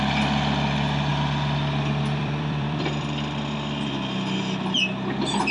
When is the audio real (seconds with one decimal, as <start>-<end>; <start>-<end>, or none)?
0.0-1.1; 4.4-5.5